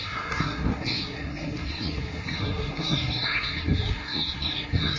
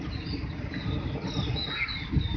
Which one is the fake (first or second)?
first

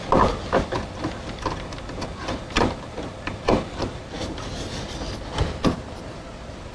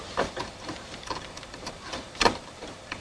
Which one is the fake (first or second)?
second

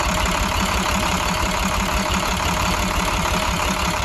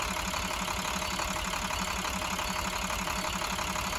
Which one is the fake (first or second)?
first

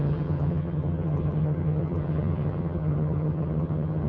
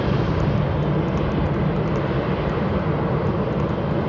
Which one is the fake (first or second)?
first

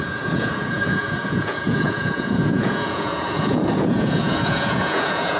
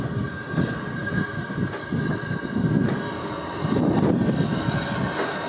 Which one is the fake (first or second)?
first